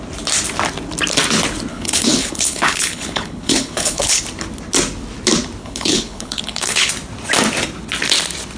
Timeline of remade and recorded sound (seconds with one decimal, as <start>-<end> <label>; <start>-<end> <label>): 0.0-1.7 recorded; 1.7-4.2 remade; 4.2-5.6 recorded; 5.6-6.9 remade; 6.9-8.6 recorded